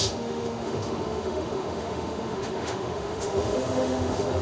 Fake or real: fake